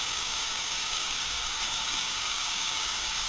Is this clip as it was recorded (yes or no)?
no